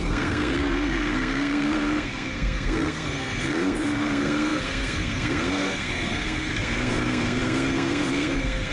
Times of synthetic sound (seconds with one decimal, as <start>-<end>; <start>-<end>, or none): 0.0-8.7